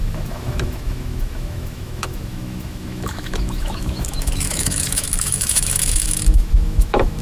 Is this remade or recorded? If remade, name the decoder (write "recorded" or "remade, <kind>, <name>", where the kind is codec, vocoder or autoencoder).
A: remade, autoencoder, DAC-VAE